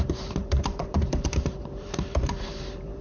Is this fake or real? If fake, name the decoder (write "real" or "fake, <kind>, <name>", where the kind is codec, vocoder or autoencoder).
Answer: fake, vocoder, BigVGAN v2